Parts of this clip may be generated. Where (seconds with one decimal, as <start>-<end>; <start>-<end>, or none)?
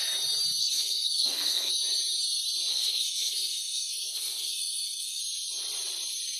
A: 0.6-1.7; 2.7-5.2